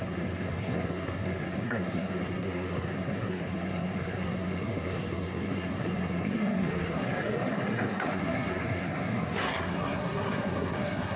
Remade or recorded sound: remade